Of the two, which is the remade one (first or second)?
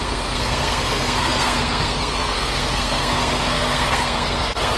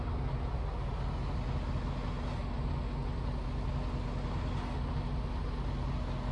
first